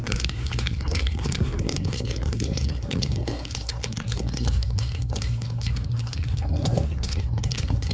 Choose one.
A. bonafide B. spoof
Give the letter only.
B